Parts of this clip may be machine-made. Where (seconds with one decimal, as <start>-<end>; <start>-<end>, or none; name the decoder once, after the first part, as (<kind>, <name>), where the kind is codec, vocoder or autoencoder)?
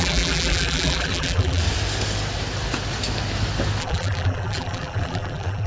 0.0-1.6 (vocoder, BigVGAN v2); 3.8-5.7